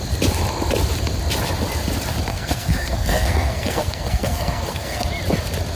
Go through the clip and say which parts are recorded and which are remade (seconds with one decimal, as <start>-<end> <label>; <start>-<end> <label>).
0.0-2.3 recorded; 2.3-5.1 remade; 5.1-5.8 recorded